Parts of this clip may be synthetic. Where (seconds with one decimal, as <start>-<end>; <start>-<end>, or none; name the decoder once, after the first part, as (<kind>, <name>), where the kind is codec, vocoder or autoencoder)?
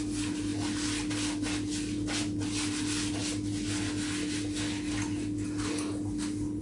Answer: none